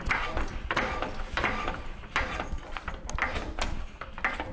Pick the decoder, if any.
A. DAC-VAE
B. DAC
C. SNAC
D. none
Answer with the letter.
D